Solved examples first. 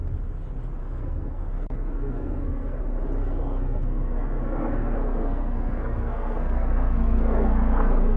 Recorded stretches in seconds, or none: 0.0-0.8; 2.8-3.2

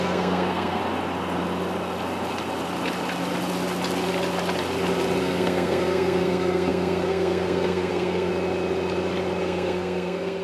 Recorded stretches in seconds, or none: 0.8-5.2; 8.3-9.4

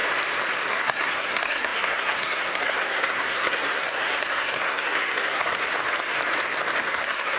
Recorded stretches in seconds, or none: 0.0-0.7; 5.7-6.8